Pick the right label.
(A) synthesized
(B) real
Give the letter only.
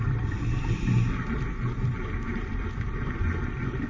B